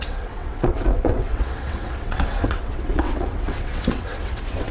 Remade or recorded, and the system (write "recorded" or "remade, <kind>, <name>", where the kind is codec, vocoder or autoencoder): remade, vocoder, WaveNeXt